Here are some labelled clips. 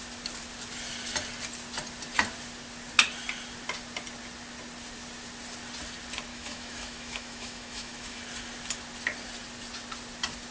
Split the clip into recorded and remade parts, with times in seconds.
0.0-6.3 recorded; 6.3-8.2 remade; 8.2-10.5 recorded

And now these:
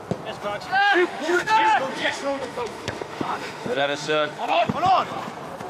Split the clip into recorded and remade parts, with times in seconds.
0.0-0.8 recorded; 0.8-1.5 remade; 1.5-1.9 recorded; 1.9-4.7 remade; 4.7-5.7 recorded